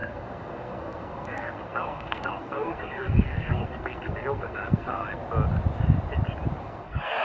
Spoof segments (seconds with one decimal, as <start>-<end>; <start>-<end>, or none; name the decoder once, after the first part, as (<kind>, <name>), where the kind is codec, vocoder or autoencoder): 0.0-5.2 (codec, SNAC); 6.6-7.2